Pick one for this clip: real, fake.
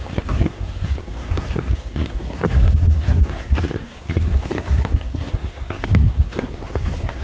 fake